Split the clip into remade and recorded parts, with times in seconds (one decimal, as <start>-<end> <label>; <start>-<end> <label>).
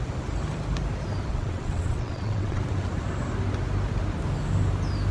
0.0-1.3 recorded; 1.3-2.6 remade; 2.6-5.1 recorded